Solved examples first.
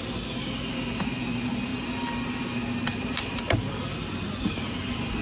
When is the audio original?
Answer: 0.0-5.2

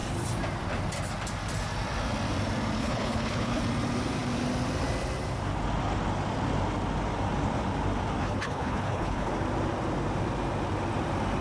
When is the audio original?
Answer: 0.0-2.8; 3.6-8.2; 9.3-11.4

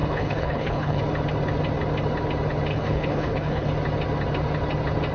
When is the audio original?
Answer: 1.0-2.7; 3.7-5.1

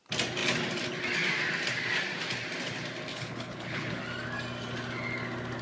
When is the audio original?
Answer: 0.0-3.1; 4.0-5.6